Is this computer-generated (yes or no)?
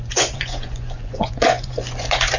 yes